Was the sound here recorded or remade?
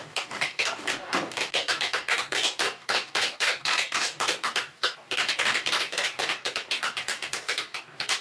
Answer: remade